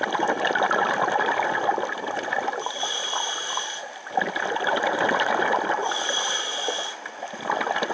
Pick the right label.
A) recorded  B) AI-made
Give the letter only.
A